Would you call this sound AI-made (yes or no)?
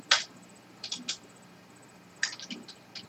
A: no